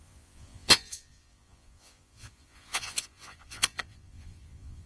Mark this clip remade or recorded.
remade